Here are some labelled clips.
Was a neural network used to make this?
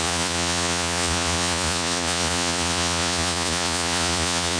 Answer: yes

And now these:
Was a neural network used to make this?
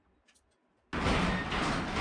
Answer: no